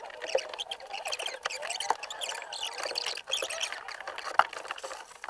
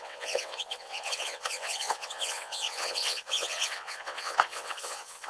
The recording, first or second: first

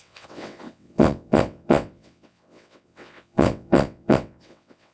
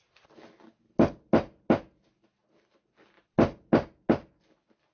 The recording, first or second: second